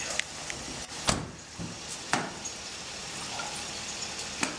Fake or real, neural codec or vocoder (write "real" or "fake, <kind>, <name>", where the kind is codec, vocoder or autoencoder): real